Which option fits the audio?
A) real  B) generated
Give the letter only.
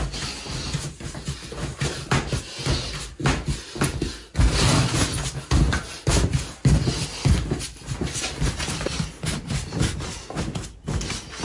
A